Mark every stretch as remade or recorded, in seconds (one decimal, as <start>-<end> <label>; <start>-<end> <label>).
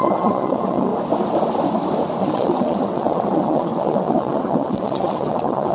0.0-0.9 remade; 0.9-2.2 recorded; 2.2-5.7 remade